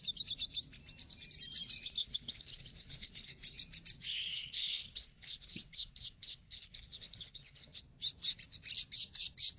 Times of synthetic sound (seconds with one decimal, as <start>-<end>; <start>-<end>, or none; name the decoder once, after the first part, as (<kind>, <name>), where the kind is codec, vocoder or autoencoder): 2.0-3.3 (codec, HILCodec); 4.1-7.8